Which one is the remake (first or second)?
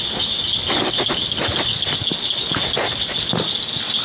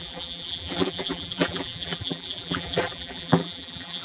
second